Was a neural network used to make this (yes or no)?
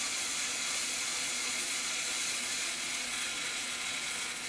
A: yes